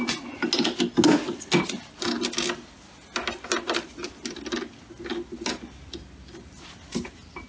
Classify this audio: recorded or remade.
recorded